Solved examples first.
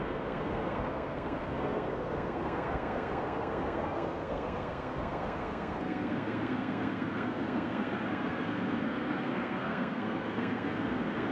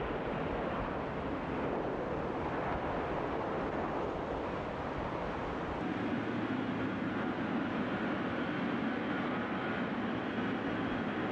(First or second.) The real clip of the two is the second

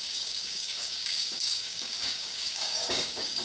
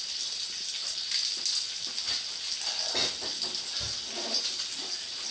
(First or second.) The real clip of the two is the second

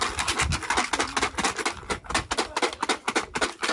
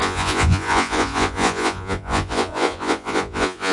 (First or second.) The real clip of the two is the first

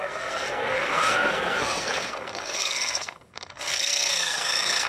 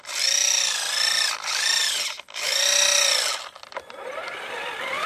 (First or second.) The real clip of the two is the second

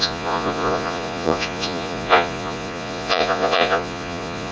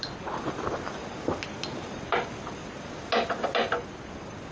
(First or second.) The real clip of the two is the second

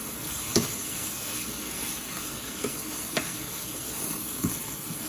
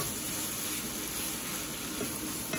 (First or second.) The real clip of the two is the second